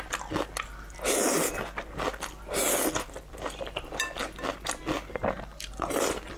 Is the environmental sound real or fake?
real